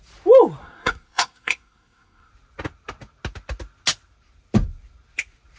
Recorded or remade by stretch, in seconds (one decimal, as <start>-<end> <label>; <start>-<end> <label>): 0.0-0.6 recorded; 0.6-2.3 remade; 2.3-5.6 recorded